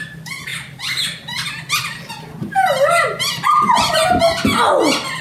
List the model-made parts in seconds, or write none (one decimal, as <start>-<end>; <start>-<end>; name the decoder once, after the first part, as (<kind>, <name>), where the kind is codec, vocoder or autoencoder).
none